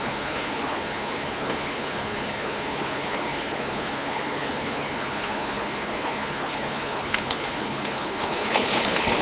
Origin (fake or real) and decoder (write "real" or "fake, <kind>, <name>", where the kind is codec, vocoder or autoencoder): fake, codec, HILCodec